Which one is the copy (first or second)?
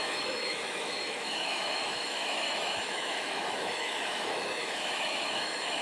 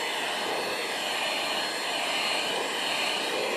first